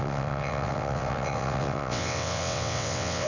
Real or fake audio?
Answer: fake